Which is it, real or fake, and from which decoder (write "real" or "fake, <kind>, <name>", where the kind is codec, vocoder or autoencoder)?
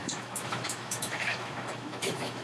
fake, autoencoder, DAC-VAE